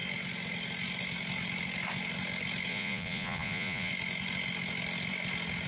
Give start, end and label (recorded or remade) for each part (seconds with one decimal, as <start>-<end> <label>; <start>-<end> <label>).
0.0-2.7 recorded; 2.7-3.9 remade; 3.9-5.7 recorded